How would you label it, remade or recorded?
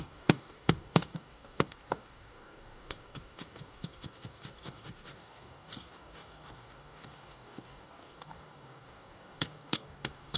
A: remade